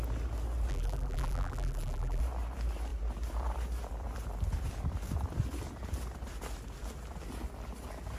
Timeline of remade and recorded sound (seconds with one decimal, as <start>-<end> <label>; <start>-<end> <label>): 0.0-0.7 recorded; 0.7-2.2 remade; 2.2-8.2 recorded